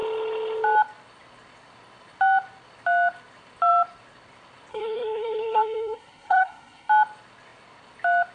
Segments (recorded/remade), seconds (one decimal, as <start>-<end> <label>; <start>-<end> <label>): 0.0-4.7 recorded; 4.7-6.9 remade; 6.9-8.3 recorded